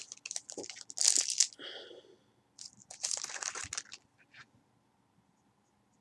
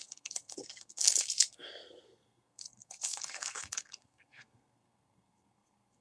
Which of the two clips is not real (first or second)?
second